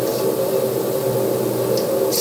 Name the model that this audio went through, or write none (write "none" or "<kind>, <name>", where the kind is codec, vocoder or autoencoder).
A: none